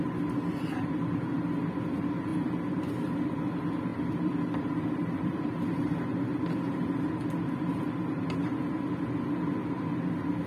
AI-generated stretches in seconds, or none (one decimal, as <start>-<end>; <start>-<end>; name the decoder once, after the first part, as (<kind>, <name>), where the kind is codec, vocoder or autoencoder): 3.9-5.9 (vocoder, BigVGAN v2)